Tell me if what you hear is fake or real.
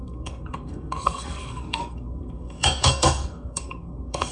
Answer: fake